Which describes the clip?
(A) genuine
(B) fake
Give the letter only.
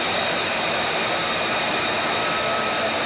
A